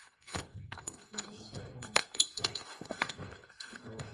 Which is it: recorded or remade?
remade